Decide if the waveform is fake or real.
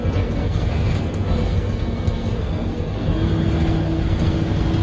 fake